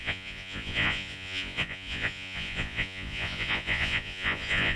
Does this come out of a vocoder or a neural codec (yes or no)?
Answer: yes